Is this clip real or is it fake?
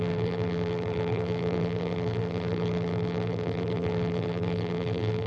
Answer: fake